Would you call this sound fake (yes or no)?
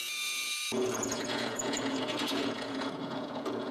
yes